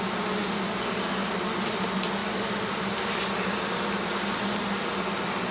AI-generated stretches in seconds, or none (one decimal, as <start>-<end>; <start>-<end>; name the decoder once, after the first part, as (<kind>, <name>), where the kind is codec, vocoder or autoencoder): none